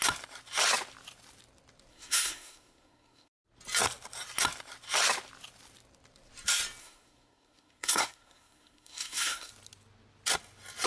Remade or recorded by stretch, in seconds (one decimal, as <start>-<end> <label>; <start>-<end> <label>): 0.0-1.9 recorded; 1.9-3.3 remade; 3.3-6.8 recorded; 6.8-9.5 remade; 9.5-10.9 recorded